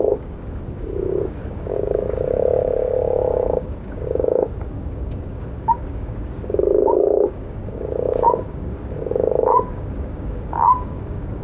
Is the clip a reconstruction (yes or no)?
yes